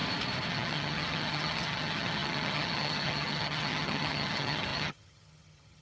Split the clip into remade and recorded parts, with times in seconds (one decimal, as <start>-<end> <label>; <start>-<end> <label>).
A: 0.0-0.5 recorded; 0.5-5.8 remade